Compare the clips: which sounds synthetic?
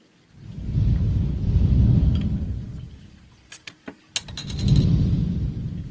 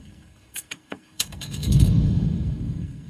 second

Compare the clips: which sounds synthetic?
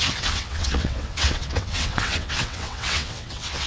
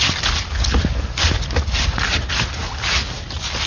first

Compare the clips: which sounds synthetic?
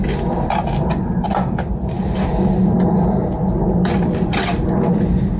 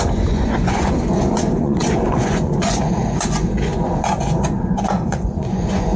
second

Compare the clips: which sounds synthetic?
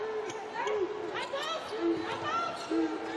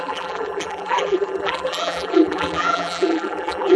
second